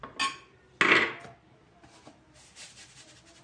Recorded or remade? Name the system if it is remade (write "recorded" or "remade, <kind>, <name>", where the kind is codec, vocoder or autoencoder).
recorded